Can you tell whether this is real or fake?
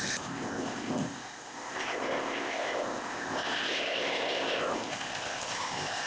fake